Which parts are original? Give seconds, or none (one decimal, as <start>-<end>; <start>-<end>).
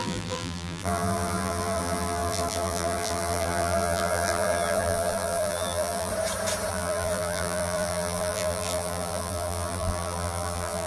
6.1-6.7